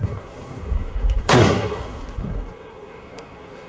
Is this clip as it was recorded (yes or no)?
no